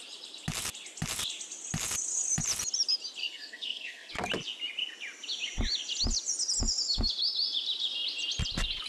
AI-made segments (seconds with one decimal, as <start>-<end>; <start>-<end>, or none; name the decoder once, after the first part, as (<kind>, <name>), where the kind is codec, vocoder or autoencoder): 3.2-4.1 (codec, SNAC)